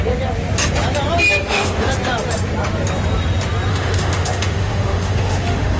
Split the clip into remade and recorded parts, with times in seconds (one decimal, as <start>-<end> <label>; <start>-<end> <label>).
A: 0.0-1.4 recorded; 1.4-1.9 remade; 1.9-3.7 recorded; 3.7-5.8 remade